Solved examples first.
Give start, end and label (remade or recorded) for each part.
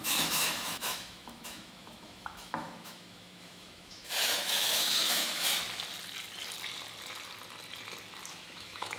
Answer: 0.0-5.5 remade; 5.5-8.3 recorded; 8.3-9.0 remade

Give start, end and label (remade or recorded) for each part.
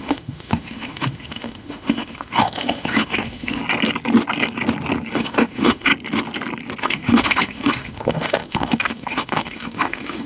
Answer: 0.0-3.6 remade; 3.6-5.1 recorded; 5.1-5.9 remade; 5.9-6.8 recorded; 6.8-10.3 remade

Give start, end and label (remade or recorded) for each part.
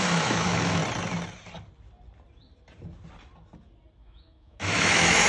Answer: 0.0-0.8 remade; 0.8-4.0 recorded; 4.0-5.3 remade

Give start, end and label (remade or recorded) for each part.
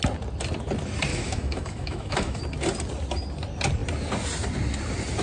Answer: 0.0-1.1 recorded; 1.1-2.4 remade; 2.4-5.2 recorded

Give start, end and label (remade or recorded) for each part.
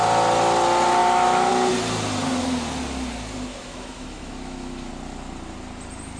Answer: 0.0-1.0 recorded; 1.0-1.5 remade; 1.5-3.5 recorded; 3.5-4.9 remade; 4.9-6.2 recorded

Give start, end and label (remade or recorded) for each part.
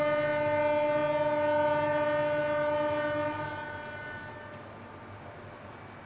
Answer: 0.0-6.1 recorded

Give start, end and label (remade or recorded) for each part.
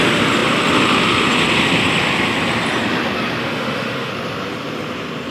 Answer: 0.0-3.4 recorded; 3.4-4.1 remade; 4.1-5.3 recorded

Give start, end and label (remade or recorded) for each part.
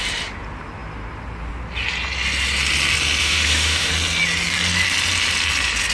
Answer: 0.0-3.2 recorded; 3.2-3.9 remade; 3.9-5.9 recorded